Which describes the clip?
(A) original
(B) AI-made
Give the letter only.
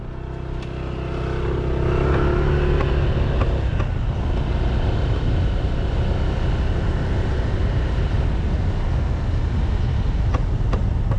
A